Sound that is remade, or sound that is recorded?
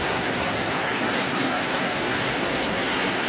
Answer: remade